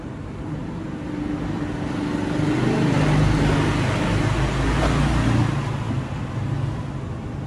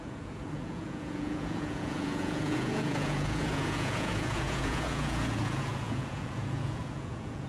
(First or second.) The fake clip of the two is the second